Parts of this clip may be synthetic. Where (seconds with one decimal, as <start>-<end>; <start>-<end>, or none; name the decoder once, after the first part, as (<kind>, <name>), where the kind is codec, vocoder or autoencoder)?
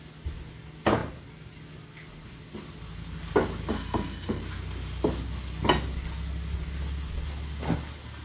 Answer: 3.7-4.4 (codec, SNAC)